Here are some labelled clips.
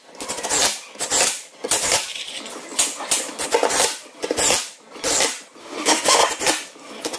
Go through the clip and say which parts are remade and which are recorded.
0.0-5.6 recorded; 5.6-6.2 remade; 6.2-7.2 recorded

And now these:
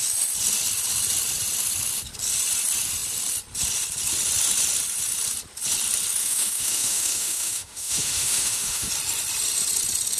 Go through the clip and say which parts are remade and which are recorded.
0.0-6.2 recorded; 6.2-8.9 remade; 8.9-10.2 recorded

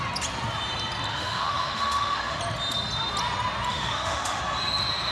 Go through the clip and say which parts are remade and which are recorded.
0.0-1.1 recorded; 1.1-2.4 remade; 2.4-3.7 recorded; 3.7-4.4 remade; 4.4-5.1 recorded

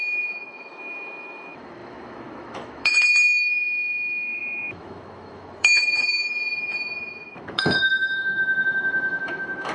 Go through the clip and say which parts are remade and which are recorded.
0.0-9.7 remade